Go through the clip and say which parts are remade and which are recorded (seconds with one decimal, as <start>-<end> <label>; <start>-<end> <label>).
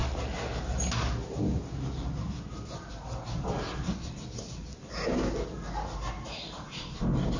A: 0.0-7.4 recorded